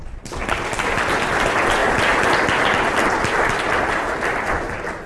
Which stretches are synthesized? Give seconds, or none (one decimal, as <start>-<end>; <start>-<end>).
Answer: none